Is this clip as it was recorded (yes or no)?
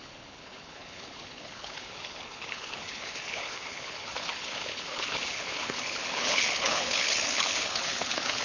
no